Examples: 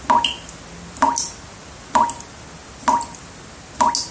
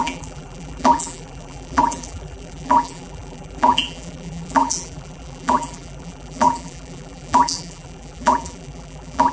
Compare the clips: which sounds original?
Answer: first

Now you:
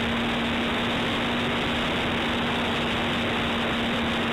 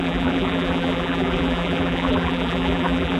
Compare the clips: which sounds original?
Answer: first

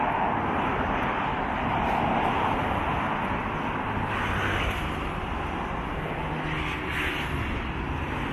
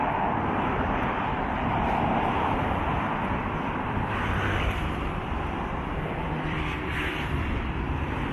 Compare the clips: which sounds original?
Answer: first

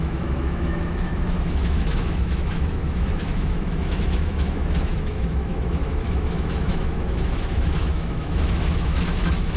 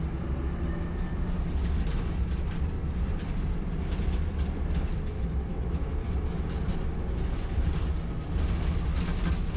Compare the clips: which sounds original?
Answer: second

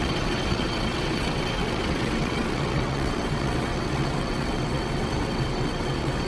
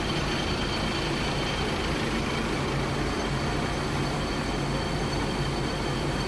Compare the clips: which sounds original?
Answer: second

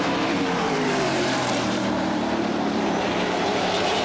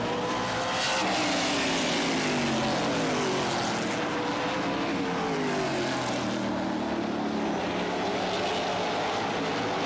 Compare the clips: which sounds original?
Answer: second